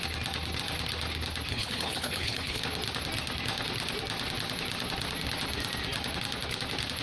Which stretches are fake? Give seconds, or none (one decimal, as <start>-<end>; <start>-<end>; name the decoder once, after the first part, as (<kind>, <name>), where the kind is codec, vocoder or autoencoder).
1.5-2.6 (codec, HILCodec)